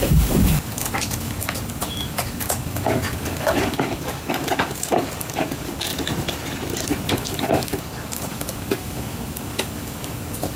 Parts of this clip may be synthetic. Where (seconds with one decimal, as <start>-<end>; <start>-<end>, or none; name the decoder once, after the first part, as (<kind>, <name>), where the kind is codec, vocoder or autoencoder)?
0.0-5.9 (codec, DAC); 7.1-10.6